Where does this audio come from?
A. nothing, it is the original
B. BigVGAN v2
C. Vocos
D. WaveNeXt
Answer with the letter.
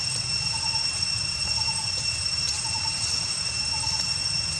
B